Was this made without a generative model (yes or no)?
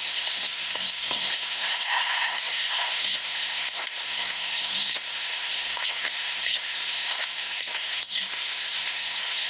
no